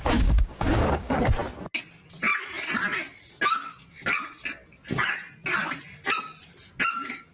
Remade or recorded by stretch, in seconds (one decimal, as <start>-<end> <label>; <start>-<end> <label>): 0.0-1.3 remade; 1.3-7.3 recorded